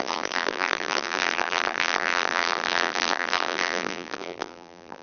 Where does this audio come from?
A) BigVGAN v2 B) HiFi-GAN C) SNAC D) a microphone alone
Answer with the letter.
A